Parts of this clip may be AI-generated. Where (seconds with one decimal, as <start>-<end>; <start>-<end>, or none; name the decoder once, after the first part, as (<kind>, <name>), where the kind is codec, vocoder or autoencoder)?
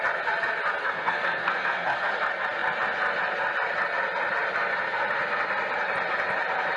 0.8-2.1 (codec, SNAC)